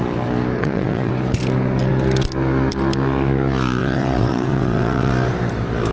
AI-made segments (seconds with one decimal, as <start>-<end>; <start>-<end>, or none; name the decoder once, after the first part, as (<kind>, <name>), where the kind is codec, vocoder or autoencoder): 0.6-1.1 (vocoder, WaveNeXt); 3.8-5.1